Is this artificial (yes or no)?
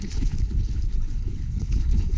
yes